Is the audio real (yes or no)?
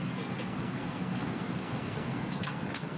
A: no